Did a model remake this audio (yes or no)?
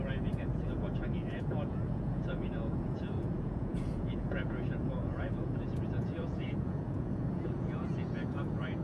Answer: yes